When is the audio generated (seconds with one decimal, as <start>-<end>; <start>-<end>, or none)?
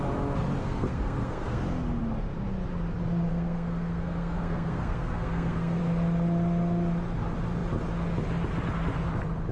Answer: 0.6-1.6; 3.3-5.8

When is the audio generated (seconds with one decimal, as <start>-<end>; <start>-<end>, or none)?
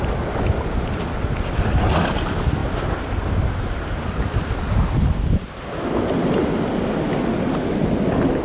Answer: none